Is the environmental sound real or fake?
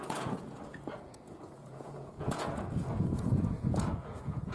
fake